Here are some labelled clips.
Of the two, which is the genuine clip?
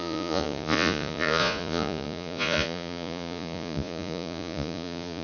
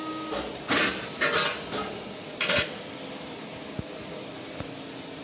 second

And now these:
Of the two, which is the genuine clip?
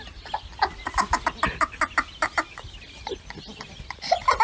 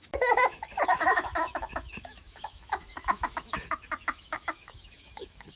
first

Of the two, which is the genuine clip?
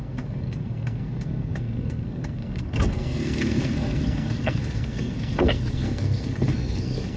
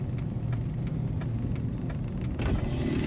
second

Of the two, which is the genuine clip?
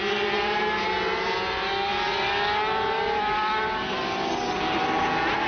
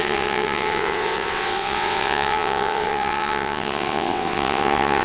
first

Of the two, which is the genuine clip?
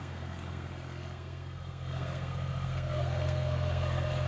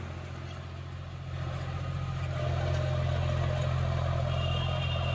second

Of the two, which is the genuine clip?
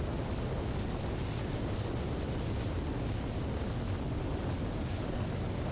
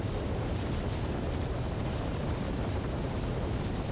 first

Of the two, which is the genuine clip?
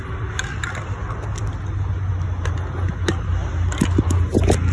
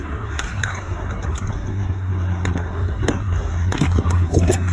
first